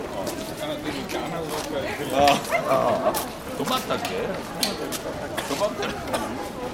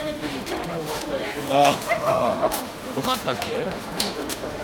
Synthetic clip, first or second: second